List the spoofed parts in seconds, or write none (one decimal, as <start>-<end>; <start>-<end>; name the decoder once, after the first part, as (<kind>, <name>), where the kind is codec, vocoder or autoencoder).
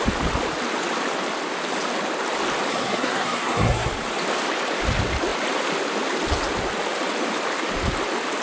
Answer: 2.7-3.9 (codec, SNAC)